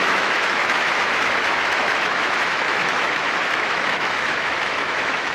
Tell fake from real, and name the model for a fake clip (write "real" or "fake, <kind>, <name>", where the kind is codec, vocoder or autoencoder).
fake, autoencoder, DAC-VAE